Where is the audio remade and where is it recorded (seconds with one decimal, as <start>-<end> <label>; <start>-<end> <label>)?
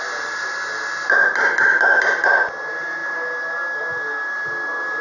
0.0-5.0 recorded